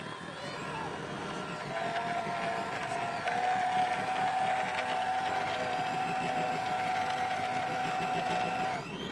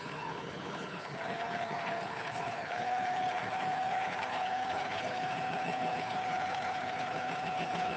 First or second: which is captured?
first